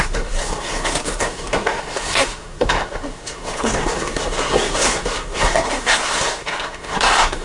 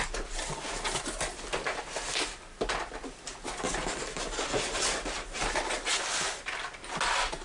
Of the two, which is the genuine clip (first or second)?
second